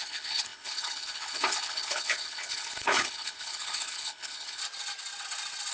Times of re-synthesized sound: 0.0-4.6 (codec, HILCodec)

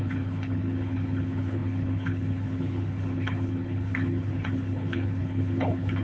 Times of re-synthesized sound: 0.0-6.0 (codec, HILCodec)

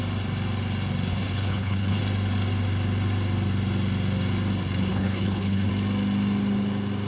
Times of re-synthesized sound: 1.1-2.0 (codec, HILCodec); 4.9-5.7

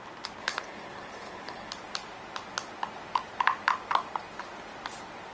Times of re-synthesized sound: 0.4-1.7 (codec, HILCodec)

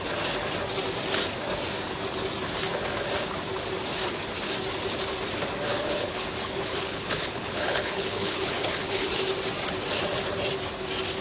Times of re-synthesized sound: 5.7-9.1 (codec, HILCodec)

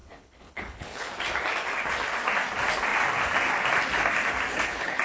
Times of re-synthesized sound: 0.0-1.2 (codec, HILCodec); 4.5-5.0